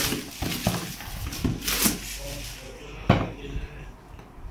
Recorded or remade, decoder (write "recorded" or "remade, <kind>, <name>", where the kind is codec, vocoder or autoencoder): recorded